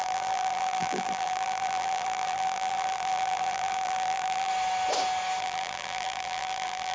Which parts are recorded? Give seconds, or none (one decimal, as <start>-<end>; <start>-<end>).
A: 4.5-5.4

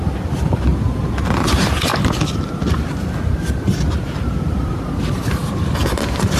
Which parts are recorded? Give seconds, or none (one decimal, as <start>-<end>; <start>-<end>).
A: 0.7-1.5; 1.9-4.4

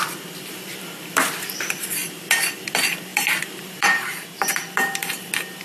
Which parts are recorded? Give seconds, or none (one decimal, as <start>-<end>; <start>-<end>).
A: none

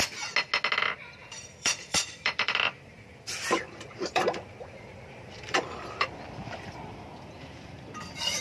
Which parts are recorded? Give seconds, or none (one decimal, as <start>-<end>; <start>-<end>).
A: 0.0-1.2; 6.2-8.4

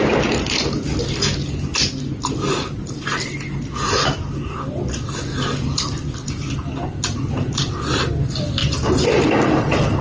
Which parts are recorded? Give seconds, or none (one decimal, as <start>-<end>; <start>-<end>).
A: 0.0-5.3; 5.8-8.6; 9.2-10.0

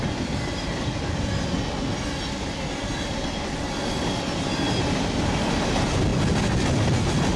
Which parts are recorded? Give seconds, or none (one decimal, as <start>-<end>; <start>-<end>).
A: 0.0-7.4

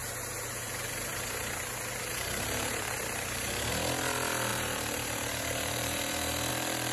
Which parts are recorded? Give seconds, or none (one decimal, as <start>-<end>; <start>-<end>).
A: 3.7-4.5; 6.5-6.9